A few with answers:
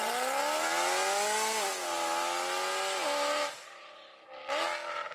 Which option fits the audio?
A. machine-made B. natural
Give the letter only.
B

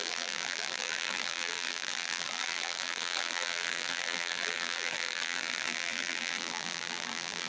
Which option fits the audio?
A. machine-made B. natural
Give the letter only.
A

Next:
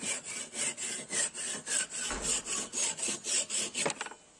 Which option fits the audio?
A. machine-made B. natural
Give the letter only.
B